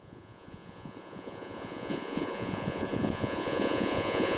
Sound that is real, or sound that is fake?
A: fake